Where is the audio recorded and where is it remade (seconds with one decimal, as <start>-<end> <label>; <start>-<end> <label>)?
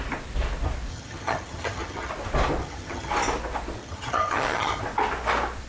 0.0-0.9 recorded; 0.9-2.1 remade; 2.1-2.6 recorded; 2.6-3.1 remade; 3.1-3.8 recorded; 3.8-4.8 remade; 4.8-5.7 recorded